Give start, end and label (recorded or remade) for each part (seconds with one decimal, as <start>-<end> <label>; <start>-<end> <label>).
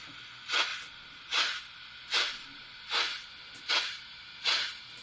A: 0.0-5.0 recorded